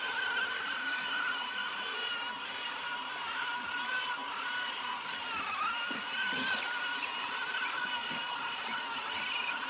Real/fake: real